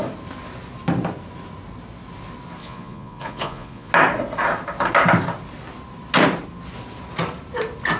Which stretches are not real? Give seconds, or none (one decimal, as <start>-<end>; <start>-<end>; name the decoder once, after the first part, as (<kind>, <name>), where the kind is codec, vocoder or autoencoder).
2.6-3.9 (vocoder, Vocos)